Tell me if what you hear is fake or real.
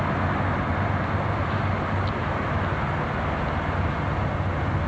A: real